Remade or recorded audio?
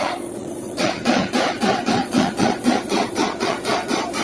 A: remade